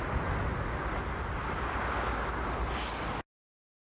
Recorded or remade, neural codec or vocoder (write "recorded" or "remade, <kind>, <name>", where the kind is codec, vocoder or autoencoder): recorded